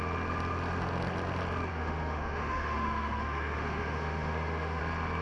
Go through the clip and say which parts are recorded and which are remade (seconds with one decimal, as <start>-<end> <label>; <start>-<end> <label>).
0.0-1.7 recorded; 1.7-4.8 remade; 4.8-5.2 recorded